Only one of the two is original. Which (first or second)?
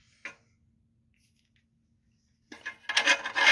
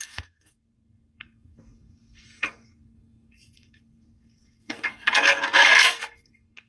first